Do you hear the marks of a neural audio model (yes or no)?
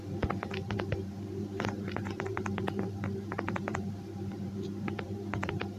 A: yes